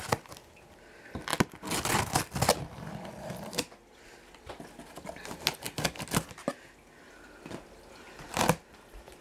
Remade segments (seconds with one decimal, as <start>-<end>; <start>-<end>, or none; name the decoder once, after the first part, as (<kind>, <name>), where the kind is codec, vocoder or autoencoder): none